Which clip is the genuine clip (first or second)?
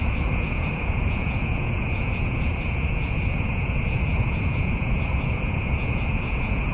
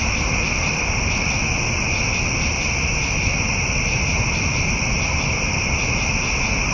second